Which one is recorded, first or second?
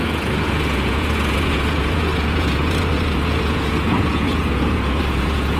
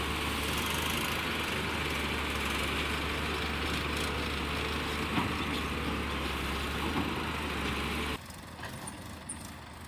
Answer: second